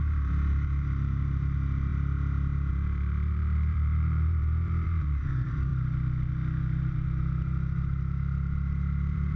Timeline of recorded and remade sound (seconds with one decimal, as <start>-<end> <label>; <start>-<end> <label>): 0.0-1.9 remade; 1.9-2.7 recorded; 2.7-5.7 remade; 5.7-6.6 recorded; 6.6-9.4 remade